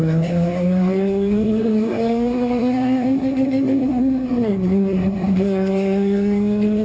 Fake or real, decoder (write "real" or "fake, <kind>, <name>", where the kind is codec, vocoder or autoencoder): fake, codec, SNAC